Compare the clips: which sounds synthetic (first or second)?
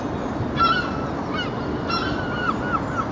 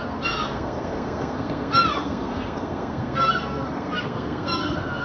second